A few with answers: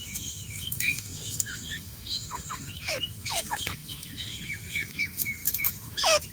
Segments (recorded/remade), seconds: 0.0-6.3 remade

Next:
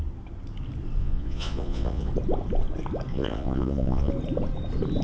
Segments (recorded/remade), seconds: 0.0-1.0 recorded; 1.0-2.1 remade; 2.1-3.1 recorded; 3.1-4.1 remade; 4.1-5.0 recorded

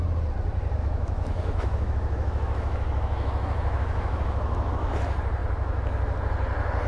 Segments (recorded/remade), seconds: 0.0-0.8 recorded; 0.8-4.9 remade; 4.9-6.9 recorded

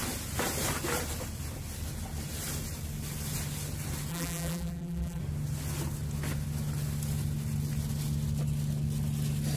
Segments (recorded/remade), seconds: 0.0-4.1 recorded; 4.1-5.2 remade; 5.2-9.6 recorded

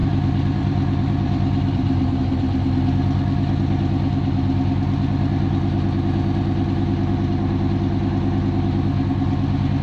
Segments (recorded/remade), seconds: 0.0-2.2 remade; 2.2-9.8 recorded

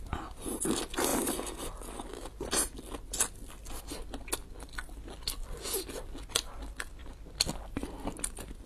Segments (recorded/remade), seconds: 0.0-8.7 recorded

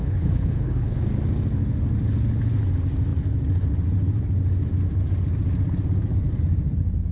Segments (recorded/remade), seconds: 0.0-1.0 remade; 1.0-7.1 recorded

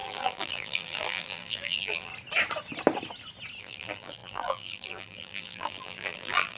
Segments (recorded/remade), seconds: 0.0-2.1 remade; 2.1-3.6 recorded; 3.6-6.6 remade